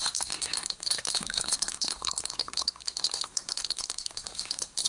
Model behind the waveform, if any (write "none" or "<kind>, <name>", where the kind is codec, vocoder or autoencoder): codec, SNAC